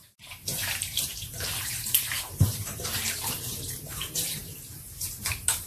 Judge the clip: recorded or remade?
remade